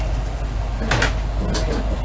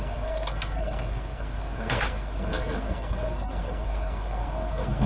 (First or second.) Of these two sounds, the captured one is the first